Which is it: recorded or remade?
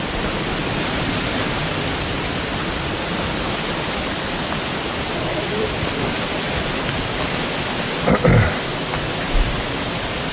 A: recorded